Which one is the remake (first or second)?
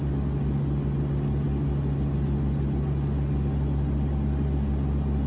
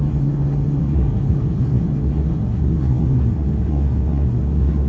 second